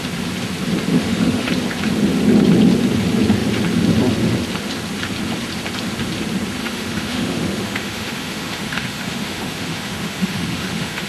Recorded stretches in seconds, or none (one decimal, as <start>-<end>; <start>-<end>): 0.0-0.9; 1.5-6.6